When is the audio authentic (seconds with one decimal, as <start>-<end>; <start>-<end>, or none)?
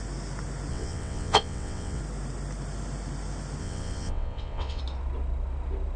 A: 0.0-0.7; 2.0-3.6; 4.8-6.0